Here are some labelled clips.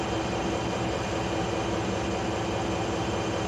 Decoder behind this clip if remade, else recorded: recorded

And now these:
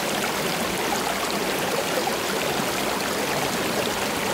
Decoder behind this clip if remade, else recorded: recorded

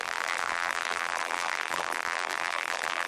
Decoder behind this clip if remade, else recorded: remade, vocoder, BigVGAN v2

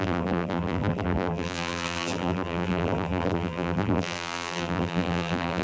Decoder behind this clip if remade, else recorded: remade, vocoder, BigVGAN v2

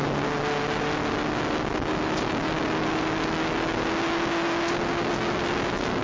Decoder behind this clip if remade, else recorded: recorded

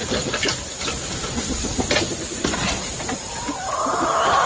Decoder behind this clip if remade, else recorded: recorded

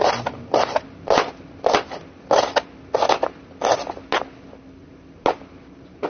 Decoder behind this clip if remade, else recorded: recorded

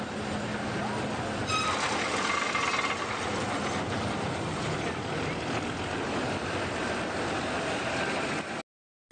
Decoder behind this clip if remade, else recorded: recorded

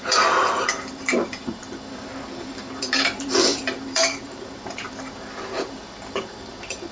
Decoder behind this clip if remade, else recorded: remade, vocoder, BigVGAN v2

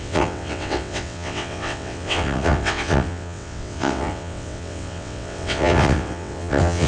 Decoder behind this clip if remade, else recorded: remade, vocoder, WaveNeXt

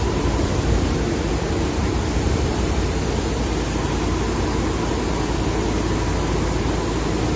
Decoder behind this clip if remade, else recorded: recorded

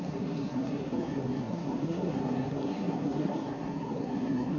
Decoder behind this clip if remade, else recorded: remade, codec, SNAC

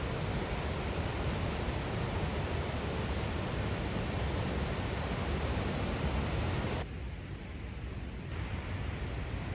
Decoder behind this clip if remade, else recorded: recorded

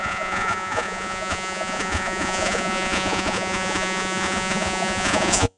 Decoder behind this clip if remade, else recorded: remade, vocoder, Vocos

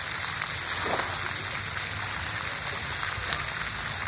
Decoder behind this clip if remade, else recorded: recorded